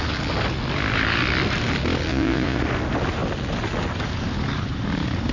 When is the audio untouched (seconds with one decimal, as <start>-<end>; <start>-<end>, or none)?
0.0-2.1; 2.6-5.3

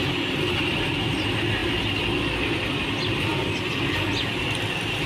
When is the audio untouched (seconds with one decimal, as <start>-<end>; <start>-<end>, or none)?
0.0-5.1

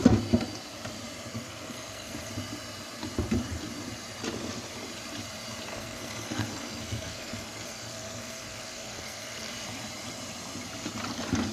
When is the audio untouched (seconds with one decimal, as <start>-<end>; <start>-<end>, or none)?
0.0-1.3; 2.3-5.7; 9.5-11.5

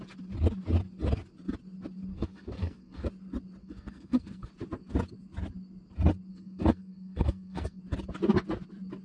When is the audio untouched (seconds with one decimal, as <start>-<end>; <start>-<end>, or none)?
0.0-2.1; 3.1-3.6; 4.5-6.3; 7.8-9.0

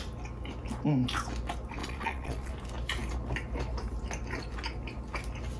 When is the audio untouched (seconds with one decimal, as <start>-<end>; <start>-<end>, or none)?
0.0-1.8; 2.5-5.6

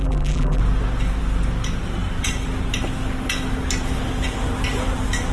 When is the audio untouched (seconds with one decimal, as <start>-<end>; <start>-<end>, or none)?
0.6-5.3

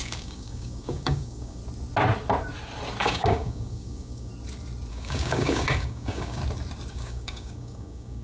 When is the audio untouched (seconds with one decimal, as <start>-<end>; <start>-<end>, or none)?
1.6-3.0; 4.3-4.9; 6.4-6.9